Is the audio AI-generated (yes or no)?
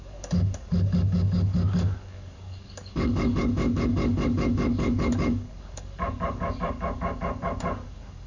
yes